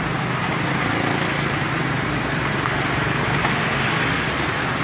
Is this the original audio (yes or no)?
yes